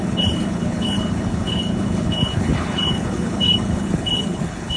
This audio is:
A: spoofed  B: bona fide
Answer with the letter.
A